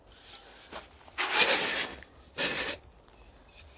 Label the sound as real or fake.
real